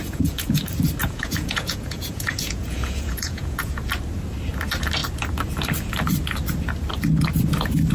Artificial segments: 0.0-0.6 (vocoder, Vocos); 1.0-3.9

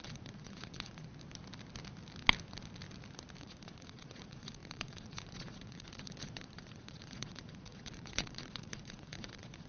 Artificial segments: 0.0-1.1 (vocoder, Vocos); 3.4-9.7

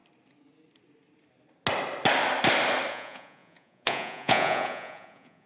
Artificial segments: 2.9-5.5 (vocoder, Vocos)

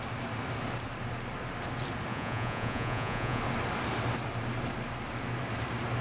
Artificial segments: 2.1-3.4 (vocoder, Vocos)